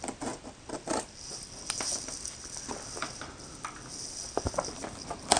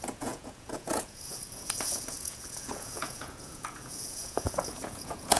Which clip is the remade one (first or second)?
second